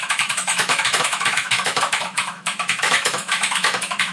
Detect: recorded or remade remade